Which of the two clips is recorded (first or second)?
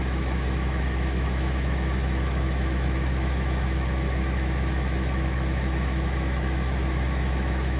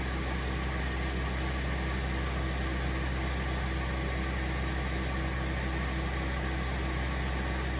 second